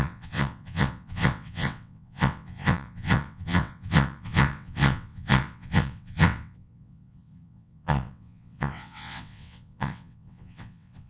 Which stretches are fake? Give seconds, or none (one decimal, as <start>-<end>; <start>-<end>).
0.0-11.1

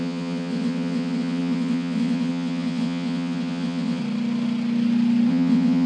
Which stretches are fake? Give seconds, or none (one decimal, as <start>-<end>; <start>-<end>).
0.0-4.0; 5.3-5.9

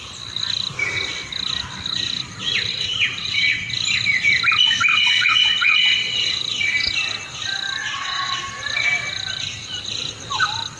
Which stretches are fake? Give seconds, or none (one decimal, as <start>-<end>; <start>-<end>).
2.7-3.7; 4.9-6.4; 7.8-8.4

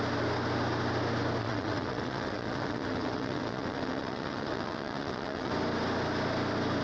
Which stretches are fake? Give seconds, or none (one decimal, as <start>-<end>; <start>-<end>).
1.4-5.5